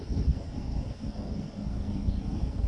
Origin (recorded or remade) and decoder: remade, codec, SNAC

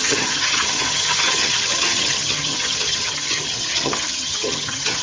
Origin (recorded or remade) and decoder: remade, vocoder, HiFi-GAN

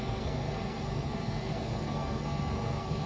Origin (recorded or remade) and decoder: remade, codec, SNAC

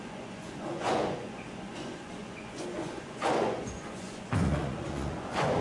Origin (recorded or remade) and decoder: remade, vocoder, Vocos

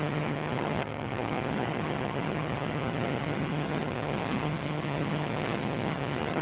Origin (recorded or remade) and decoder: remade, vocoder, HiFi-GAN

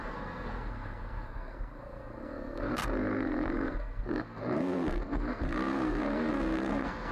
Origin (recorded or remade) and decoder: remade, codec, SNAC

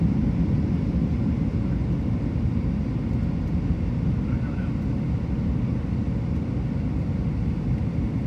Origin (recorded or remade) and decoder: recorded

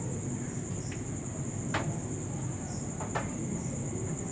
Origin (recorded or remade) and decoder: recorded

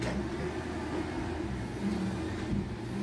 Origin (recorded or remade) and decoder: recorded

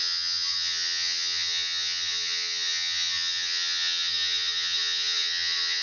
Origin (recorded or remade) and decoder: remade, vocoder, HiFi-GAN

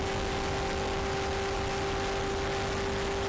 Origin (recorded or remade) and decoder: recorded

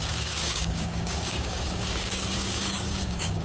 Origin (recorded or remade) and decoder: remade, codec, DAC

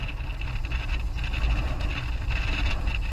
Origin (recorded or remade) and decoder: recorded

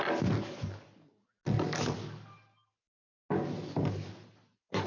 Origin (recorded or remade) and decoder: recorded